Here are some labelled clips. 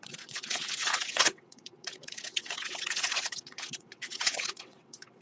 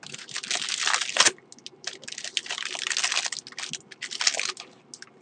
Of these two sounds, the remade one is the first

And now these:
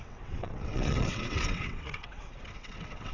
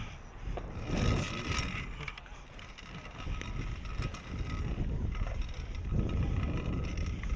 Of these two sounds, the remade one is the first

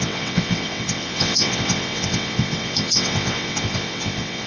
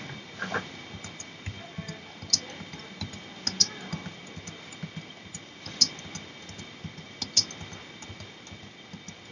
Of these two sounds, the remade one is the first